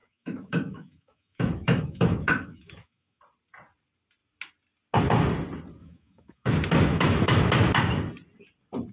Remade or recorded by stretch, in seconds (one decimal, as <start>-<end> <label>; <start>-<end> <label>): 0.0-3.2 remade; 3.2-5.8 recorded; 5.8-6.5 remade; 6.5-6.9 recorded; 6.9-7.4 remade; 7.4-8.9 recorded